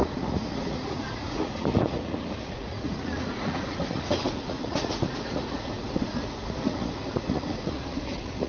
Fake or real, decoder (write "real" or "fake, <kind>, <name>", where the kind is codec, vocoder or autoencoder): fake, vocoder, Vocos